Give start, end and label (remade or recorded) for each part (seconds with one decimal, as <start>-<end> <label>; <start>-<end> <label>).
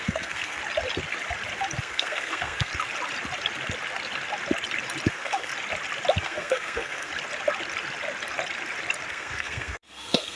0.0-0.6 remade; 0.6-1.8 recorded; 1.8-2.7 remade; 2.7-5.1 recorded; 5.1-5.5 remade; 5.5-6.2 recorded; 6.2-7.1 remade; 7.1-9.1 recorded; 9.1-10.4 remade